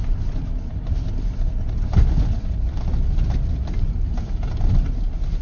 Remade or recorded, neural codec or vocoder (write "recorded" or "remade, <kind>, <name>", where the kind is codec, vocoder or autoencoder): recorded